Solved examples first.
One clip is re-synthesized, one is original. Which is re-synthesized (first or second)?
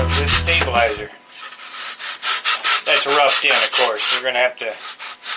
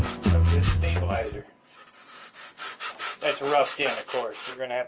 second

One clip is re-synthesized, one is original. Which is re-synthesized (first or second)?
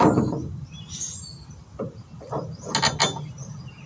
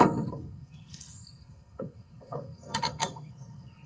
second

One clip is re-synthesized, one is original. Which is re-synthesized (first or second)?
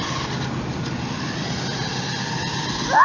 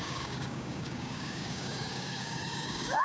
second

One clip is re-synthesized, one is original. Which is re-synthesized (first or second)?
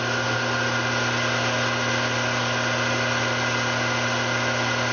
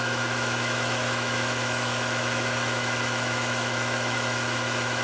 second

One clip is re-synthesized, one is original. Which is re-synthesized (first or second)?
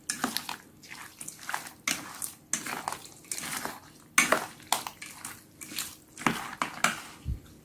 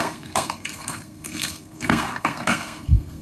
second